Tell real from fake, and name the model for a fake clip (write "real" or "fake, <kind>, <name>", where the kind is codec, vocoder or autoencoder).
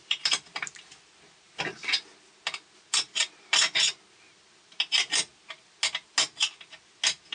real